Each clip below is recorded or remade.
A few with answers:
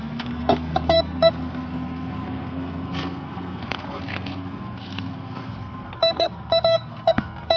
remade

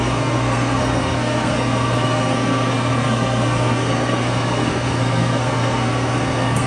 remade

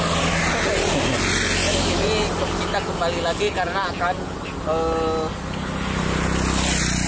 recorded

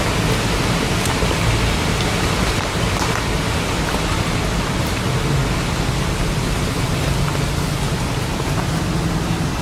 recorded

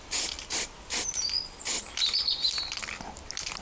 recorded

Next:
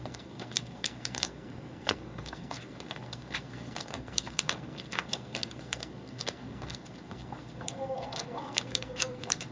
remade